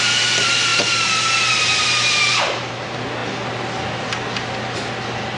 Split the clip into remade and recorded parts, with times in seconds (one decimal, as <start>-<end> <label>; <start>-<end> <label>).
0.0-5.4 recorded